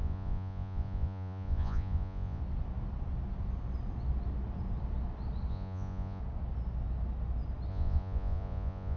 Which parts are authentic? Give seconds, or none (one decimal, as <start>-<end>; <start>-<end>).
2.4-5.5; 6.2-7.7